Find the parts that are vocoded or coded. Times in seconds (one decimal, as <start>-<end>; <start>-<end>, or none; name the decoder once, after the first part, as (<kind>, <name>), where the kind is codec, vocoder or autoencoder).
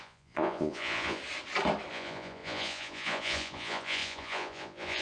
0.0-1.2 (vocoder, Vocos); 1.9-5.0